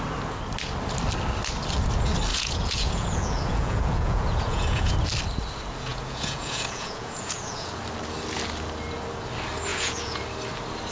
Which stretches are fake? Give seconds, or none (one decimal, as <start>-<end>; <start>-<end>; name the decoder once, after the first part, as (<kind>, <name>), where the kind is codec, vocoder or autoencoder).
2.3-4.9 (vocoder, Vocos); 5.9-7.7; 9.7-10.2